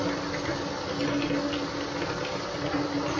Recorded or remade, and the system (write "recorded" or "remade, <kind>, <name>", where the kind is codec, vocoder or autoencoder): recorded